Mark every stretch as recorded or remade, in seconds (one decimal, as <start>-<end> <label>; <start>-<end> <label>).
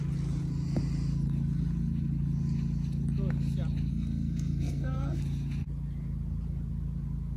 0.0-3.9 recorded; 3.9-5.2 remade; 5.2-7.4 recorded